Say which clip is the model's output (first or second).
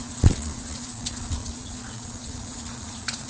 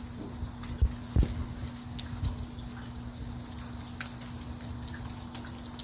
first